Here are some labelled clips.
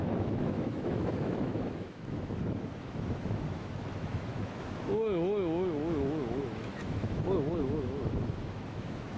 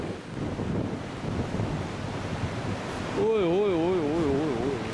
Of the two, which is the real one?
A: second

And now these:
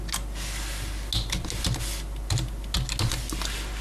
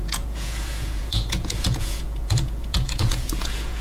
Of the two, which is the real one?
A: first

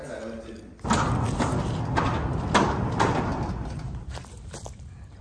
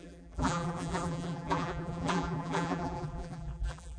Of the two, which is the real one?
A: first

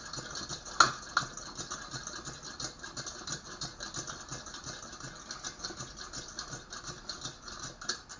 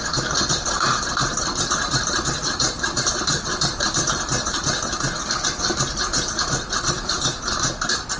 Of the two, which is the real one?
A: first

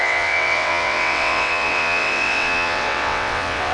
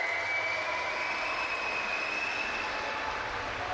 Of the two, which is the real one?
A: second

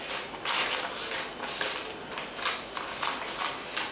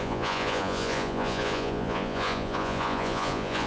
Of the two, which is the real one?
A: first